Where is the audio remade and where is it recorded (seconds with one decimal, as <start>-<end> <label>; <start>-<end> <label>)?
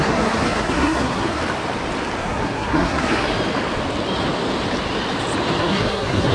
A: 0.0-1.4 remade; 1.4-2.2 recorded; 2.2-3.3 remade; 3.3-5.6 recorded; 5.6-6.3 remade